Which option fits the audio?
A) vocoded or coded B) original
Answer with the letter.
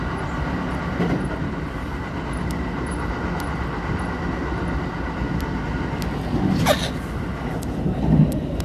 B